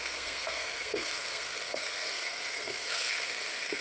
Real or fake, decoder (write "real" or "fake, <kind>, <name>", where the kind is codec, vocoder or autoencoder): fake, codec, SNAC